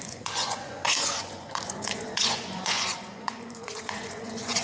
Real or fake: fake